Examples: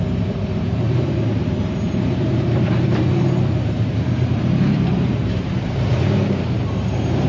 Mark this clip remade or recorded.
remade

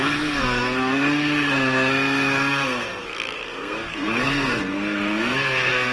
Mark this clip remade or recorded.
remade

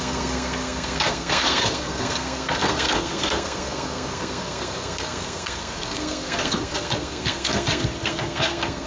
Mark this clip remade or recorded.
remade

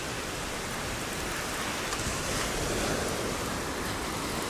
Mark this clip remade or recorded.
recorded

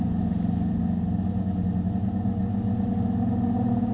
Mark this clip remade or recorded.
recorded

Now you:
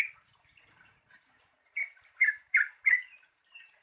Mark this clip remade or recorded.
remade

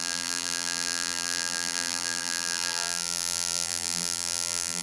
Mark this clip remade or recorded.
remade